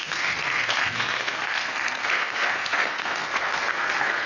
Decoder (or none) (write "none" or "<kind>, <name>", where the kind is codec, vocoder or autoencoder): codec, SNAC